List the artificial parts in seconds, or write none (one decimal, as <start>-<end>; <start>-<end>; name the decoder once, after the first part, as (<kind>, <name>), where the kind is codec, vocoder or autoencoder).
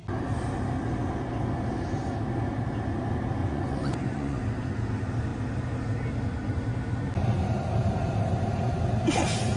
3.4-4.4 (vocoder, Vocos)